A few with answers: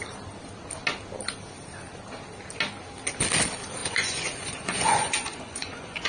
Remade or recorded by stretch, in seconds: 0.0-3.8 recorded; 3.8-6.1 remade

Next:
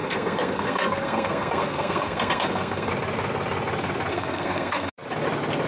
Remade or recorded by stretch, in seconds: 0.0-2.9 remade; 2.9-4.1 recorded; 4.1-4.9 remade; 4.9-5.7 recorded